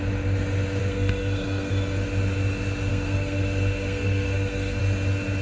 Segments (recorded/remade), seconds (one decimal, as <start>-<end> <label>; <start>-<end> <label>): 0.0-0.8 recorded; 0.8-1.7 remade; 1.7-2.9 recorded; 2.9-4.8 remade; 4.8-5.4 recorded